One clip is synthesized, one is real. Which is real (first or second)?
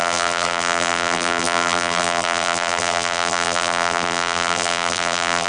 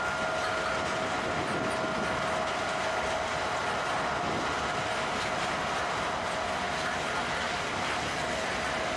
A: second